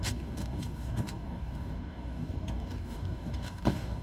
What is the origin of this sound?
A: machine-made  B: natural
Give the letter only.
A